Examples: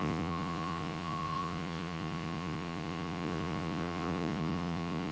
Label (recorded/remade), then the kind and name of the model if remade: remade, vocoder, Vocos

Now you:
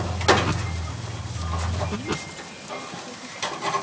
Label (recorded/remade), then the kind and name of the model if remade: recorded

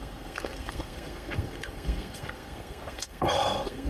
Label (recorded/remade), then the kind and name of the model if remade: remade, codec, SNAC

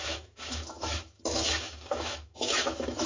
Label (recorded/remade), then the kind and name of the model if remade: remade, autoencoder, DAC-VAE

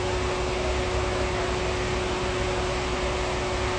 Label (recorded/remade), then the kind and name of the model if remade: recorded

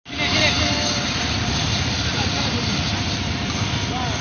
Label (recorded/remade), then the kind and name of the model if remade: recorded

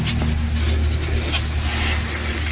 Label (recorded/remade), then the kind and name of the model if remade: recorded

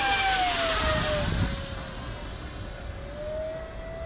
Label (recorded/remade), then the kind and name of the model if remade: recorded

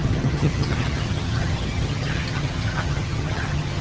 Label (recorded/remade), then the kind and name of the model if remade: remade, vocoder, HiFi-GAN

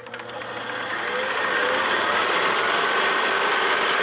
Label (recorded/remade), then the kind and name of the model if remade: recorded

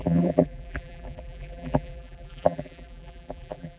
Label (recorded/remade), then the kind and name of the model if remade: remade, vocoder, BigVGAN v2